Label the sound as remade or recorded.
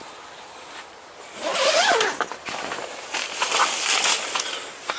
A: recorded